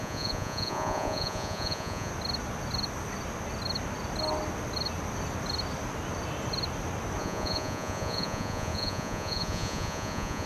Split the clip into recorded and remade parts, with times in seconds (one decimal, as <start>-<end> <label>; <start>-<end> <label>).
0.0-2.1 remade; 2.1-7.2 recorded; 7.2-10.5 remade